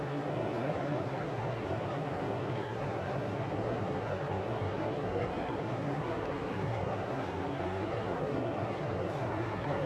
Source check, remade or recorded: remade